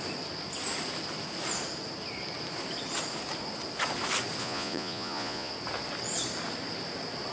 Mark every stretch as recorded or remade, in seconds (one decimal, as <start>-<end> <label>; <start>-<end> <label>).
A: 0.0-4.4 recorded; 4.4-5.5 remade; 5.5-7.3 recorded